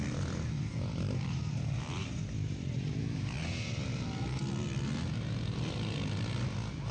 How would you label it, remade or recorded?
recorded